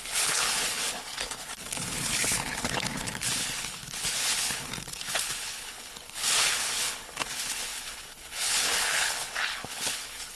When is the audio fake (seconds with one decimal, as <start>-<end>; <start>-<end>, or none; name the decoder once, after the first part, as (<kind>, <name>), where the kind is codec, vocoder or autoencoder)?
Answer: 0.0-10.4 (codec, HILCodec)

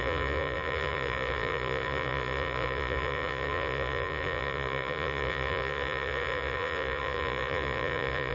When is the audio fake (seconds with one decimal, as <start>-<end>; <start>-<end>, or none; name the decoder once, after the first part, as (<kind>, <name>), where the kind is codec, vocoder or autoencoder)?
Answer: 0.0-8.3 (vocoder, Vocos)

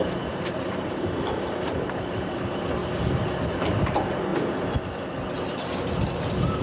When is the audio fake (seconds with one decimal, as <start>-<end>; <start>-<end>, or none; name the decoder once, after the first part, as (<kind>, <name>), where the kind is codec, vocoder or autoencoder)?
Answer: 0.0-2.8 (vocoder, BigVGAN v2); 3.5-4.3

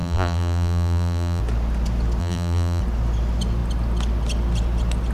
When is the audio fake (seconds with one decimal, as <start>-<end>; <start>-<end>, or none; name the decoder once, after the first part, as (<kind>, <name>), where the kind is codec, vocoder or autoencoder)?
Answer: 0.0-1.4 (vocoder, BigVGAN v2); 2.2-2.8

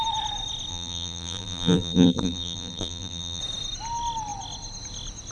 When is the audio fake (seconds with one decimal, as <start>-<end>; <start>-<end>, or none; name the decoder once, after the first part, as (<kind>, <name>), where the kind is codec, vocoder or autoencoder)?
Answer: 0.7-3.4 (vocoder, BigVGAN v2)

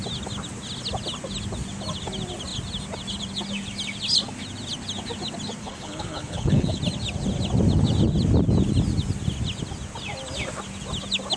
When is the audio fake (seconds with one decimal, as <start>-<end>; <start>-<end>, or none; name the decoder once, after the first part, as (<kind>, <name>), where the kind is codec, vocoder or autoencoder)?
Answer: 5.6-6.8 (codec, HILCodec)

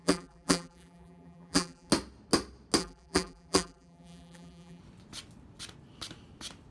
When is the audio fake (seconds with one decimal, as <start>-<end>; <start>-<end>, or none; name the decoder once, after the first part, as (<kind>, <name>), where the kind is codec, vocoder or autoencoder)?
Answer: 0.0-1.9 (vocoder, BigVGAN v2); 2.8-4.8

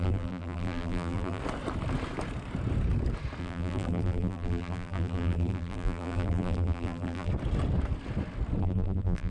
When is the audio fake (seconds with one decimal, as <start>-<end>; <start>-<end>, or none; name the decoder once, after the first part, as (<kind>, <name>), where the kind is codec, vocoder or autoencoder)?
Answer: 0.0-1.4 (vocoder, BigVGAN v2); 3.4-7.3; 8.6-9.3